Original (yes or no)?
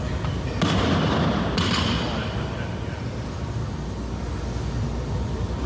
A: yes